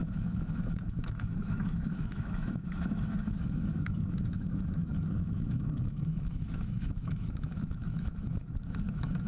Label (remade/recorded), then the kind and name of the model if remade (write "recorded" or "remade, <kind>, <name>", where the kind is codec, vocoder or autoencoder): remade, autoencoder, DAC-VAE